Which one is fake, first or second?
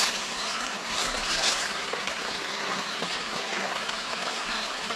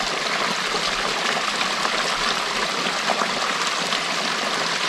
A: first